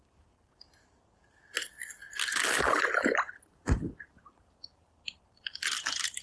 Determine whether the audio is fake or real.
real